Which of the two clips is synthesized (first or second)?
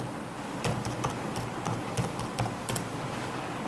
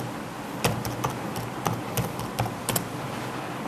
first